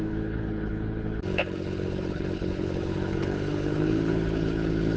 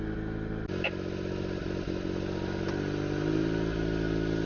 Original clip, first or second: second